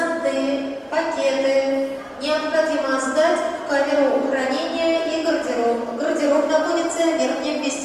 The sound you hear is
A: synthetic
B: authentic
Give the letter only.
B